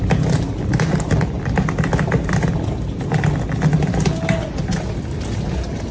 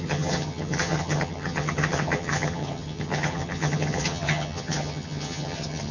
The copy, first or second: second